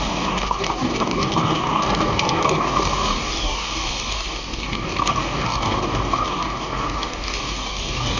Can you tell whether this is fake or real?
fake